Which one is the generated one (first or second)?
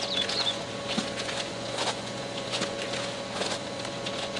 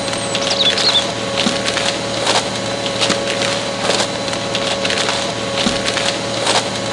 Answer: first